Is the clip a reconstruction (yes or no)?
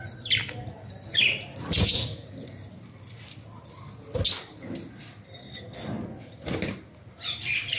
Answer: no